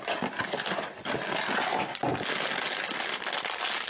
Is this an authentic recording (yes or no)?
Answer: yes